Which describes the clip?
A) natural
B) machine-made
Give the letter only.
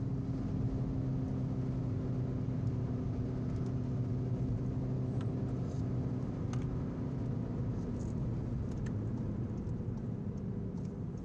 A